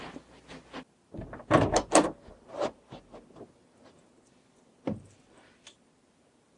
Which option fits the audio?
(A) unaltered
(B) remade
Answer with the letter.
A